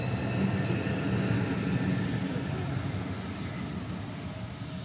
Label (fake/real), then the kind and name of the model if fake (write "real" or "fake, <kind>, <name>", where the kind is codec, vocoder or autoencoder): real